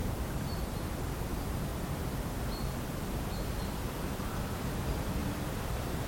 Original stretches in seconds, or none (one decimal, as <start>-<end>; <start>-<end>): 1.2-5.2